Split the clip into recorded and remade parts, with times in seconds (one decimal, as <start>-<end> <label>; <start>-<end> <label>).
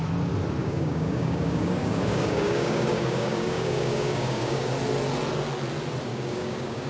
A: 0.0-0.6 recorded; 0.6-4.7 remade; 4.7-6.1 recorded; 6.1-6.9 remade